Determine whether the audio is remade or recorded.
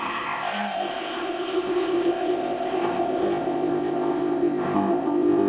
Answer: remade